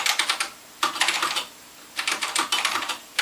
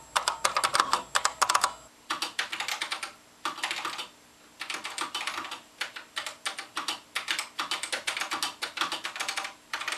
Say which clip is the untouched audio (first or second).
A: second